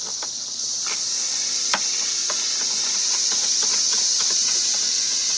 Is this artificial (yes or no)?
no